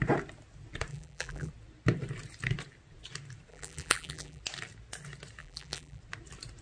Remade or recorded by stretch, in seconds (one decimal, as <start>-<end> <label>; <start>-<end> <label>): 0.0-0.9 recorded; 0.9-1.5 remade; 1.5-3.5 recorded; 3.5-4.4 remade; 4.4-5.4 recorded; 5.4-6.0 remade; 6.0-6.6 recorded